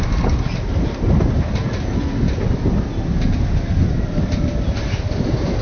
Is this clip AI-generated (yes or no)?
no